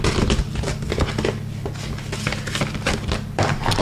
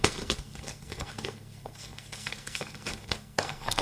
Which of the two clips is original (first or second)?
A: first